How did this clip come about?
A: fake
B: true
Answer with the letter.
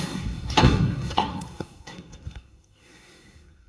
A